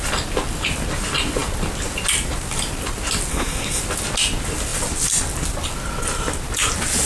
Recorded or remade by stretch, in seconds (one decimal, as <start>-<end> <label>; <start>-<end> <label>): 0.0-3.3 recorded; 3.3-3.8 remade; 3.8-7.1 recorded